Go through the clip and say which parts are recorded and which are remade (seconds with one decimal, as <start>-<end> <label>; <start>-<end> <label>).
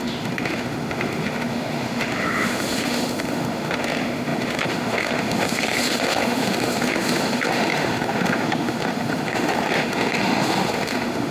0.0-11.3 remade